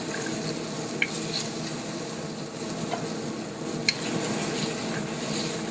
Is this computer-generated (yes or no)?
no